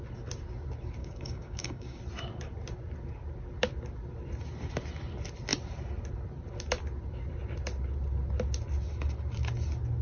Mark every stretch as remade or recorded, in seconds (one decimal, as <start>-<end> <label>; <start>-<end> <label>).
0.0-1.0 recorded; 1.0-2.0 remade; 2.0-10.0 recorded